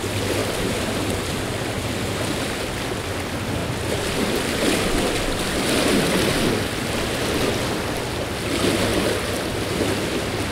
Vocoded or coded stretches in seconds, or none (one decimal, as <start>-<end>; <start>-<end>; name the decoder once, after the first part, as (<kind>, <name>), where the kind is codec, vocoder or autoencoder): 0.4-1.7 (vocoder, BigVGAN v2); 3.6-4.2